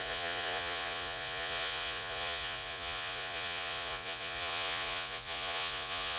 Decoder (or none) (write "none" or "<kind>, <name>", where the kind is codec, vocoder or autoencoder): vocoder, Vocos